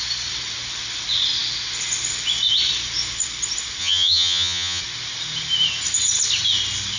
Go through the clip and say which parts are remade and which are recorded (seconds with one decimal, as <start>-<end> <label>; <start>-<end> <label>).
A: 0.0-3.8 recorded; 3.8-4.8 remade; 4.8-7.0 recorded